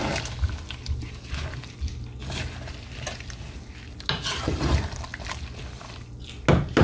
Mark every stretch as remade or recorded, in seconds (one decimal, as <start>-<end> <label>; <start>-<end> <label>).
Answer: 0.0-6.8 recorded

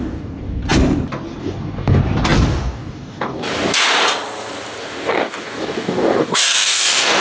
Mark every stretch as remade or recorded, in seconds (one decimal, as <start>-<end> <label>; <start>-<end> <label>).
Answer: 0.0-0.6 remade; 0.6-1.4 recorded; 1.4-2.0 remade; 2.0-2.5 recorded; 2.5-3.8 remade; 3.8-4.8 recorded; 4.8-7.2 remade